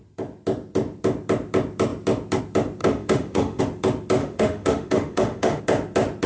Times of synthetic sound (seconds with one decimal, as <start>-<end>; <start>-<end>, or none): 2.8-3.6; 4.2-5.6

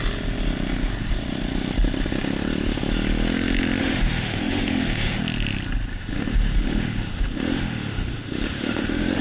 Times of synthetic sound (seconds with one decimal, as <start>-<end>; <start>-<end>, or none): 3.8-5.2; 5.9-9.2